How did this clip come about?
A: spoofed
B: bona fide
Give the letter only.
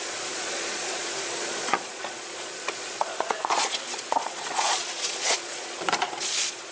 A